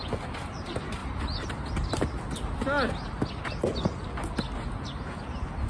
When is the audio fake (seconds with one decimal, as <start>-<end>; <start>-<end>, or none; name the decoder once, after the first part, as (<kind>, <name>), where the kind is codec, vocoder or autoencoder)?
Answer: none